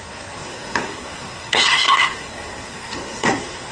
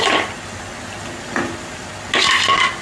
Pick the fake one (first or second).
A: first